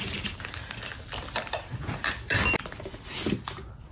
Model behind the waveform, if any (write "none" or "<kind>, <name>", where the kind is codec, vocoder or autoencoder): none